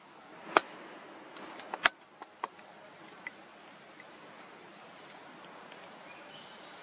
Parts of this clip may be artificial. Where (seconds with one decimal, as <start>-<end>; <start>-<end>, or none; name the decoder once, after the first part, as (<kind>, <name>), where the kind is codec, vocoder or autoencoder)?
0.6-1.4 (vocoder, BigVGAN v2)